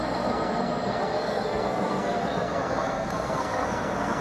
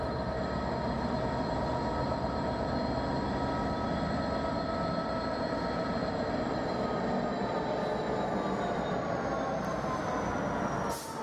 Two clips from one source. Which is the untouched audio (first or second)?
second